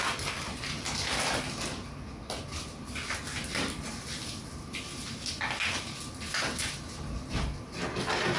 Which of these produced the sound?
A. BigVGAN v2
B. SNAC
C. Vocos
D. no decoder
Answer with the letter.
D